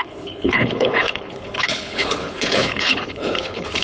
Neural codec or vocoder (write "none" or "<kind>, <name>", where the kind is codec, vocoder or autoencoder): codec, HILCodec